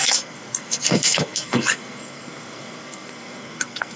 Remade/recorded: remade